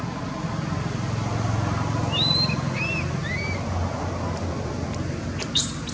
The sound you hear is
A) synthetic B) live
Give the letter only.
B